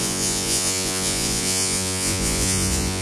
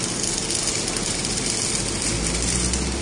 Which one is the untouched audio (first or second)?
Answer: second